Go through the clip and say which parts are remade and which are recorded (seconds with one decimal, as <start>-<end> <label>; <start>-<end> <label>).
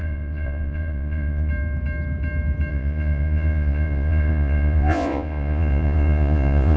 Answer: 0.0-1.5 remade; 1.5-2.7 recorded; 2.7-6.8 remade